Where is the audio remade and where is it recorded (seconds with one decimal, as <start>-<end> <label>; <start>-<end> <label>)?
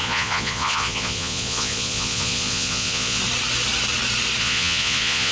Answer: 0.0-3.2 remade; 3.2-4.4 recorded; 4.4-5.3 remade